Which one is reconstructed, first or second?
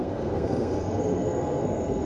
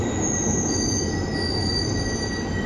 first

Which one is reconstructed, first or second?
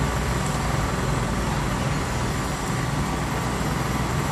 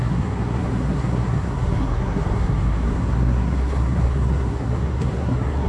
second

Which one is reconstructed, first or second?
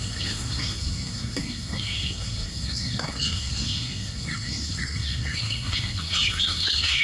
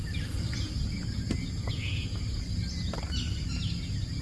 first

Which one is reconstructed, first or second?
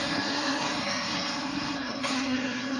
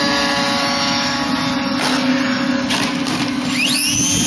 first